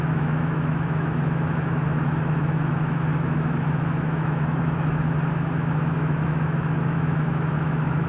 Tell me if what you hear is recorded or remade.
remade